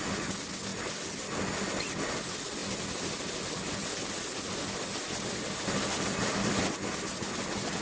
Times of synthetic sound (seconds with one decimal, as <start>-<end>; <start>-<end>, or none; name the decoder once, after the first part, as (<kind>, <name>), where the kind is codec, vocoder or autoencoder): 0.7-1.3 (vocoder, BigVGAN v2)